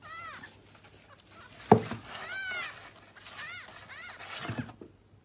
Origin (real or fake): real